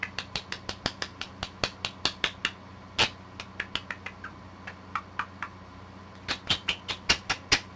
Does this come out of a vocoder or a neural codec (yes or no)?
no